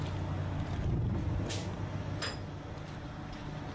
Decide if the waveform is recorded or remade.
recorded